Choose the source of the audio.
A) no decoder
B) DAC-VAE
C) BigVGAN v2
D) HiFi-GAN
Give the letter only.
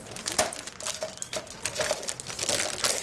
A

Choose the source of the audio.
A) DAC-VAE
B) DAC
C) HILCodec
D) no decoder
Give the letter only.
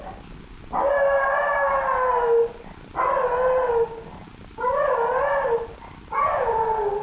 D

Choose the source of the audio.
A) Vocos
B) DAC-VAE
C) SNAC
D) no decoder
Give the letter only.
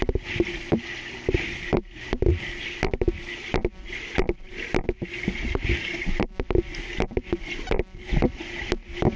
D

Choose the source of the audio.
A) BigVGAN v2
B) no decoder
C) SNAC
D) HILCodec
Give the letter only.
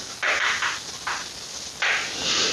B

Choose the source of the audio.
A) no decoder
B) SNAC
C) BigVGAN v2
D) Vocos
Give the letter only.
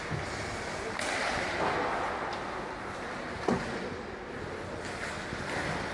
A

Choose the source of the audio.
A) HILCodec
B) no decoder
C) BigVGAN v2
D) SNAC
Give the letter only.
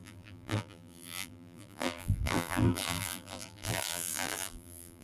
C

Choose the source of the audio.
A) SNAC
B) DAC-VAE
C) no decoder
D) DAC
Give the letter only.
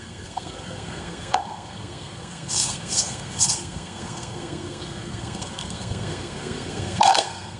A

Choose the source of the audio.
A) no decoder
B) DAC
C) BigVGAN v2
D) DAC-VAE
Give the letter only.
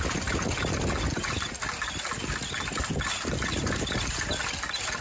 A